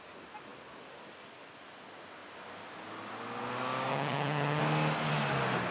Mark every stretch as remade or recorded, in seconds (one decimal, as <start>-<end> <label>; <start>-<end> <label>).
0.0-3.9 recorded; 3.9-4.6 remade; 4.6-5.7 recorded